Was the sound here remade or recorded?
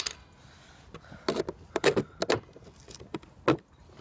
recorded